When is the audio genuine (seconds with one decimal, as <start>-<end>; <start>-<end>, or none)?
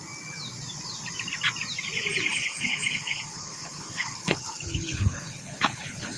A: 0.0-2.3